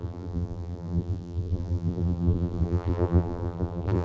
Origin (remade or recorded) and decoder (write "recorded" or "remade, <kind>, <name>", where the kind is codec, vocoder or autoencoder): remade, vocoder, BigVGAN v2